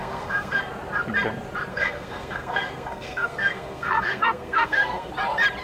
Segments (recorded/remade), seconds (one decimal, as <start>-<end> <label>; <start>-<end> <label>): 0.0-0.6 remade; 0.6-1.7 recorded; 1.7-5.1 remade; 5.1-5.6 recorded